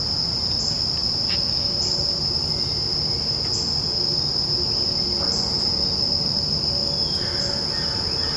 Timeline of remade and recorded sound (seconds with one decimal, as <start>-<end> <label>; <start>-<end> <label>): 0.0-8.4 recorded